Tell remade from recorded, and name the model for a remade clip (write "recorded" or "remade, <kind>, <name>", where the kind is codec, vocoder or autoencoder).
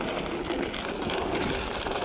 recorded